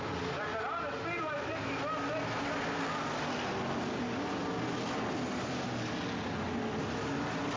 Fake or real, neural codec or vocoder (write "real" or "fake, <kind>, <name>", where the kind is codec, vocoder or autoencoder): real